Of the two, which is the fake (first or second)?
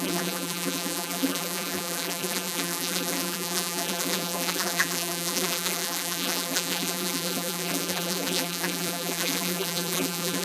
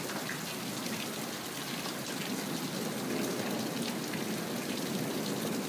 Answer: first